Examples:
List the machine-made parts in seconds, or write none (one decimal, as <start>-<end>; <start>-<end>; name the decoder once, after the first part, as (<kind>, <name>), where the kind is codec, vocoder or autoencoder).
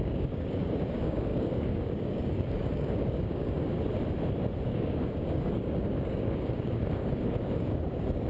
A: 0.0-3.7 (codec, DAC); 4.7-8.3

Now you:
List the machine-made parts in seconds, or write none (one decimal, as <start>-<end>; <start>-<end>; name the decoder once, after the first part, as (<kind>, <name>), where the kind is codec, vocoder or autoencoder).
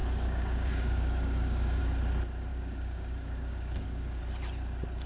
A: 0.0-1.8 (codec, DAC); 2.5-4.2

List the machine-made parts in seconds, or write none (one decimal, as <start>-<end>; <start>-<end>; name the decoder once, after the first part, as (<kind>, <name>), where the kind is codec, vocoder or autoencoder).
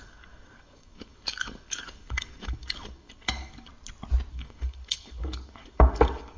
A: 0.0-3.7 (codec, DAC); 4.3-6.4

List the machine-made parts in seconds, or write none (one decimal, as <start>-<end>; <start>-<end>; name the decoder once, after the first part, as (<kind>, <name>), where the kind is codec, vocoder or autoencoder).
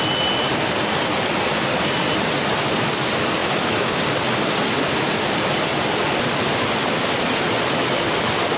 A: 3.4-4.0 (autoencoder, DAC-VAE)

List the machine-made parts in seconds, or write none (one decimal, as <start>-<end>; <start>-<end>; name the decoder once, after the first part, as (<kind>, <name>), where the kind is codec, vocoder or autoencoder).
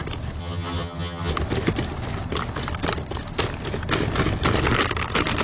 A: 0.4-1.3 (vocoder, HiFi-GAN)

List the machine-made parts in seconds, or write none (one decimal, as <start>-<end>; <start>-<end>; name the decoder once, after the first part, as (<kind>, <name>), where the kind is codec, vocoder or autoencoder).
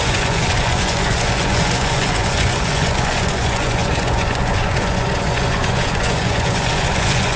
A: 0.0-7.4 (vocoder, Vocos)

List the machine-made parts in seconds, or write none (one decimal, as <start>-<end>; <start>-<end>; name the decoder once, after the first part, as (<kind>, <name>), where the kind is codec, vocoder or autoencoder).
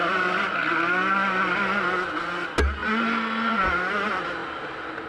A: none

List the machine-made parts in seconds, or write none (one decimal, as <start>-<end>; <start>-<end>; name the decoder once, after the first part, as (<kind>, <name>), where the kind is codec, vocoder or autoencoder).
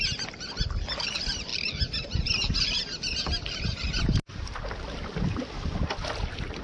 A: none